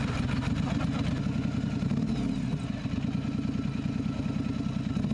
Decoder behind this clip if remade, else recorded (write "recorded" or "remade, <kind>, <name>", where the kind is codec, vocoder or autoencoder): recorded